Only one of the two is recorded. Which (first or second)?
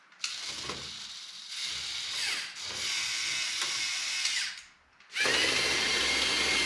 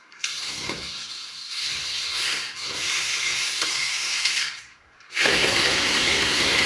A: first